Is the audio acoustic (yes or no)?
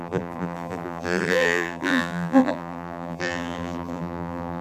no